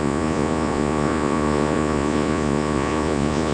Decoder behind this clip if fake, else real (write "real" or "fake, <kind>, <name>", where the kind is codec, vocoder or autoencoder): fake, vocoder, Vocos